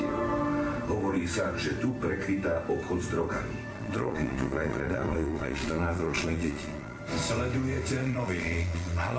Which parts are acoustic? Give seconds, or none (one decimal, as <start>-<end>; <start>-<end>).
0.0-3.7; 7.0-8.0